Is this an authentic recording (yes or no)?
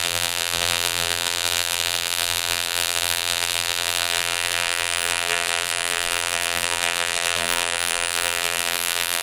no